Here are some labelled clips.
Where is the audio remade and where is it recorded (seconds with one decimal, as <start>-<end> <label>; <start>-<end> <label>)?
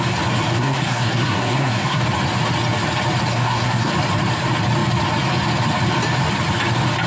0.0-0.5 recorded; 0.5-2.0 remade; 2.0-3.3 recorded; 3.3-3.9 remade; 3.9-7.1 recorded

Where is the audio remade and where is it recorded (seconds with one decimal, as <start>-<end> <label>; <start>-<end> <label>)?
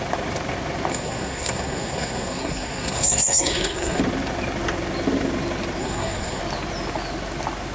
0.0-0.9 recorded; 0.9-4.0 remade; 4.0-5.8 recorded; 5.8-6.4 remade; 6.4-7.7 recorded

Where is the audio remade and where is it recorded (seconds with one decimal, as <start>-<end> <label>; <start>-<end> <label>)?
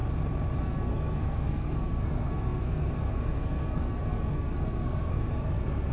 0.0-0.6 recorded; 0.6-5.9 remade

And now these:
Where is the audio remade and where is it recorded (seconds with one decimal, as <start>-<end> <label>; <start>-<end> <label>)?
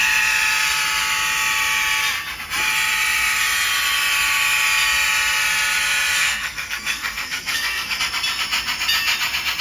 0.0-6.2 recorded; 6.2-8.0 remade; 8.0-9.6 recorded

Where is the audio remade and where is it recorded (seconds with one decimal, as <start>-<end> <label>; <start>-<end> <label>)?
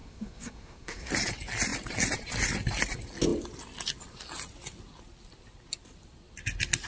0.0-1.1 remade; 1.1-6.9 recorded